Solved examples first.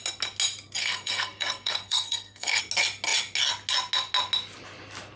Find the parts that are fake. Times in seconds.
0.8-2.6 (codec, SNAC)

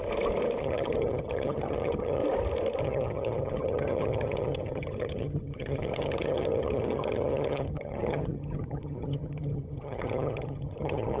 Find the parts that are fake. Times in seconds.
0.6-2.2 (vocoder, HiFi-GAN); 2.8-11.2

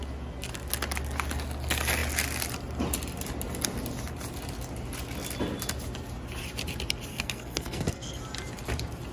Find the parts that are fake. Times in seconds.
7.1-8.2 (codec, SNAC)